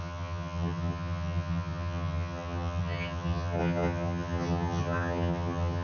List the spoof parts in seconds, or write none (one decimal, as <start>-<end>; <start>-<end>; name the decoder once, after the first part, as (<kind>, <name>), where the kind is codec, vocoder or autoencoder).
0.0-5.8 (vocoder, HiFi-GAN)